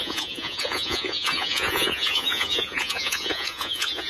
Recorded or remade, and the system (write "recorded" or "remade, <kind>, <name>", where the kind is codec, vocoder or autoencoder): remade, vocoder, Vocos